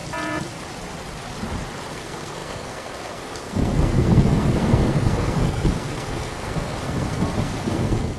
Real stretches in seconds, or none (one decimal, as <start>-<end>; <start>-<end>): 0.0-1.9